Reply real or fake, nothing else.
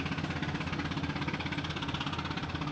real